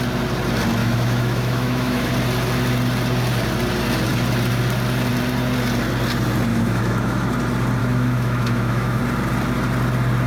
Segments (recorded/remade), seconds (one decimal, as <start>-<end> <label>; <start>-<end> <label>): 0.0-0.8 recorded; 0.8-2.1 remade; 2.1-6.5 recorded; 6.5-7.3 remade; 7.3-7.8 recorded; 7.8-9.0 remade; 9.0-10.3 recorded